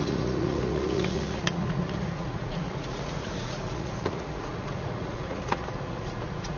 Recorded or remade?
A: remade